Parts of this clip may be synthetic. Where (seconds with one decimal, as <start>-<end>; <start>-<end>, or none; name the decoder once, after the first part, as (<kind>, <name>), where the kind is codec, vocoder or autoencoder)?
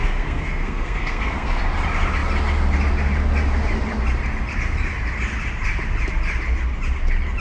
0.0-1.6 (codec, SNAC)